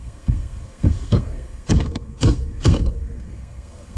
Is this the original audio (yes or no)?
no